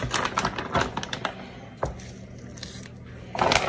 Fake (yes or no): no